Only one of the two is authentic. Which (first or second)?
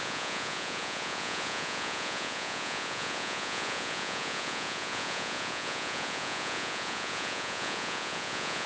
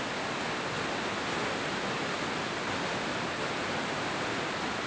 second